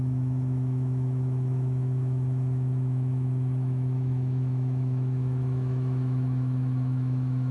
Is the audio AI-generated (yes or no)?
yes